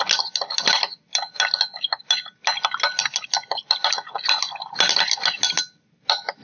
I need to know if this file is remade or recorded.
recorded